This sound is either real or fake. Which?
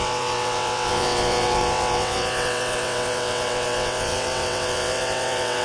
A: fake